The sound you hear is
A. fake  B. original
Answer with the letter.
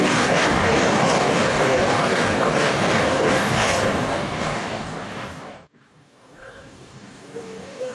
A